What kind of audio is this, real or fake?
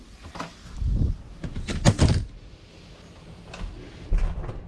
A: real